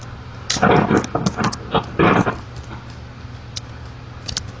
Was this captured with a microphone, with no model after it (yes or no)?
yes